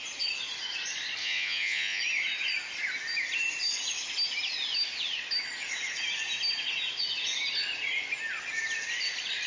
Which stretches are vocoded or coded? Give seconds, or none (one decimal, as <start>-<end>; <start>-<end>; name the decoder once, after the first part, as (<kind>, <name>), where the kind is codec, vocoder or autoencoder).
1.2-2.0 (vocoder, Vocos)